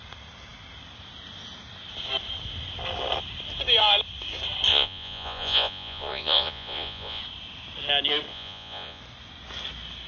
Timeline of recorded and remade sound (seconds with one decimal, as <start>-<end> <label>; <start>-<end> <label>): 0.0-4.7 recorded; 4.7-7.2 remade; 7.2-8.3 recorded; 8.3-9.0 remade; 9.0-10.1 recorded